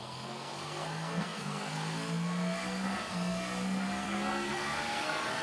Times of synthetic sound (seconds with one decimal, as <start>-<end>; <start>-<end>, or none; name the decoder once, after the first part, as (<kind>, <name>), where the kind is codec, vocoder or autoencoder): 0.0-5.4 (codec, SNAC)